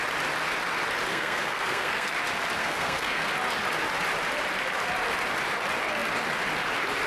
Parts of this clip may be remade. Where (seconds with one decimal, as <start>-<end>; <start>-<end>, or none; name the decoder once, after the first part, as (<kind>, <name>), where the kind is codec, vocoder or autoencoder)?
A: 1.1-2.1 (codec, SNAC); 2.6-3.3